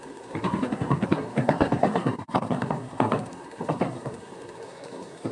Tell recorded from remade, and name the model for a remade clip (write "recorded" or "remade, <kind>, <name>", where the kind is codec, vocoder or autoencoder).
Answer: remade, codec, SNAC